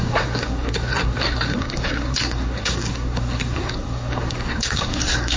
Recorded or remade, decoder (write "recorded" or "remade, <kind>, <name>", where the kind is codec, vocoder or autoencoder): remade, codec, SNAC